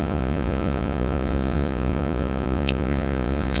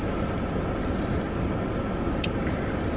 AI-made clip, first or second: first